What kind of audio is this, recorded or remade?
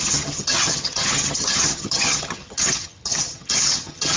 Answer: remade